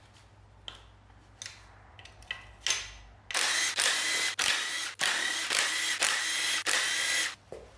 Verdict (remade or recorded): recorded